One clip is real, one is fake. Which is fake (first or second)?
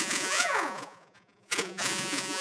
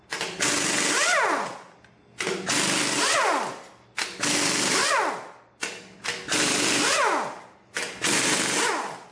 first